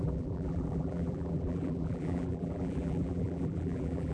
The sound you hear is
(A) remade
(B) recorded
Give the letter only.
A